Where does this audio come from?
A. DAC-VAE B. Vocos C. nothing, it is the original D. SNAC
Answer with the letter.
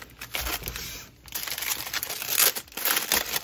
C